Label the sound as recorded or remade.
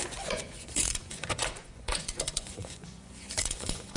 remade